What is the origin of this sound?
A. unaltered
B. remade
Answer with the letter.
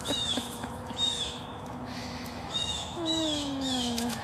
B